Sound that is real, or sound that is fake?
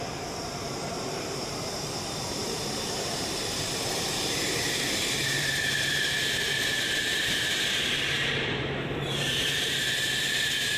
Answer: fake